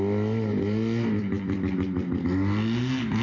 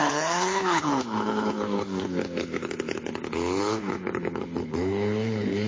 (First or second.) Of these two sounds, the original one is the first